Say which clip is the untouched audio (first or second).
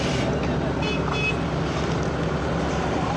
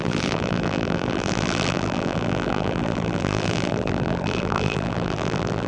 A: first